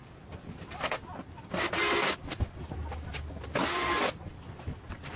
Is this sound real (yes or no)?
yes